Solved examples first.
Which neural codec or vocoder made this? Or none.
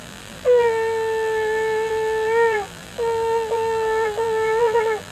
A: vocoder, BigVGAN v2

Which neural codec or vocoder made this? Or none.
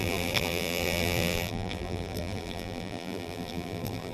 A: vocoder, BigVGAN v2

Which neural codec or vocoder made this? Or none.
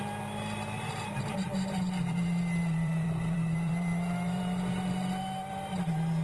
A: vocoder, BigVGAN v2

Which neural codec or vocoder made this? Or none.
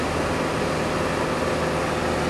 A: none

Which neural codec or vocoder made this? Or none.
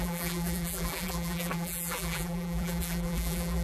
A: vocoder, BigVGAN v2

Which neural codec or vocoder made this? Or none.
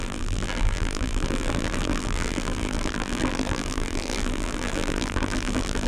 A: vocoder, BigVGAN v2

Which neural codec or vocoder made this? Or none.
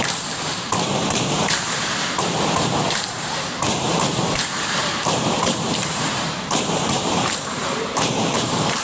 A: vocoder, BigVGAN v2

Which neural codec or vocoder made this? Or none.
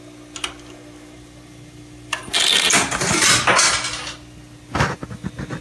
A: none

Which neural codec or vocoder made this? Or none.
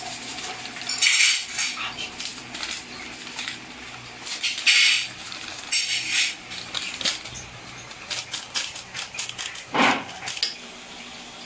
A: none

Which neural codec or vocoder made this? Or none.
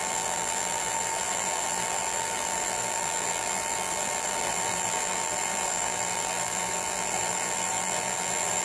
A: vocoder, BigVGAN v2